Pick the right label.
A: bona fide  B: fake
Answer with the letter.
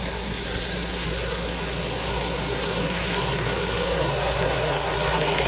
B